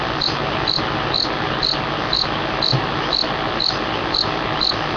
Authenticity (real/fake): real